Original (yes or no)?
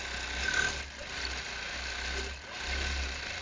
yes